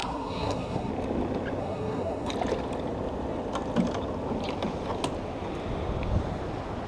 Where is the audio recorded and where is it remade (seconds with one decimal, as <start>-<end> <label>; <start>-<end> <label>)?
0.0-0.9 remade; 0.9-1.6 recorded; 1.6-2.3 remade; 2.3-6.9 recorded